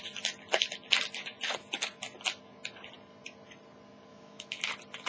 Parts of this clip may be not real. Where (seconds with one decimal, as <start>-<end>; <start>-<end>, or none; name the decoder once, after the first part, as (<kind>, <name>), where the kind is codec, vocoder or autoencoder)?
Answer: 4.1-4.6 (autoencoder, DAC-VAE)